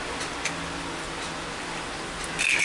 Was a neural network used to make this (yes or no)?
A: no